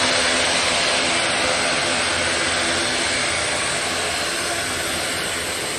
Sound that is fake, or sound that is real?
real